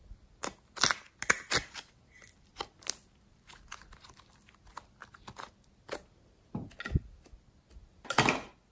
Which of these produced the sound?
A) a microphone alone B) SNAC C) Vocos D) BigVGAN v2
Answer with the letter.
A